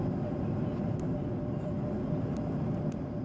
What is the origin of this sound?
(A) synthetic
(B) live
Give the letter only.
B